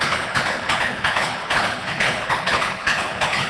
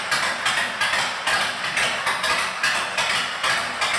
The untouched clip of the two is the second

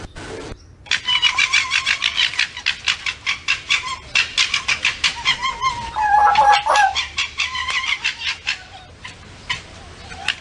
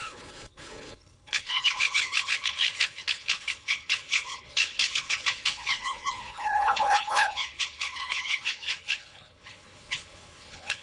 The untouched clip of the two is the first